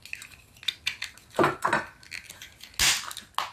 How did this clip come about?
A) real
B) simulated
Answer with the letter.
A